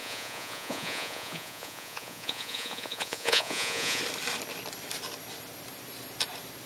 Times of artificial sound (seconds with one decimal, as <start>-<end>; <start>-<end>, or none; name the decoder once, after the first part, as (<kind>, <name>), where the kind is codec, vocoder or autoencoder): 0.0-4.0 (vocoder, Vocos)